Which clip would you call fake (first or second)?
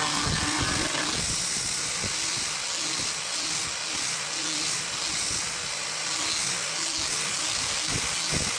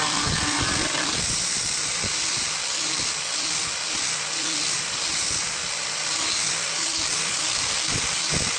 second